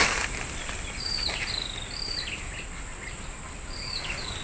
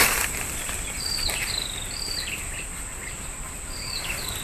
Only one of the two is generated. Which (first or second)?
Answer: second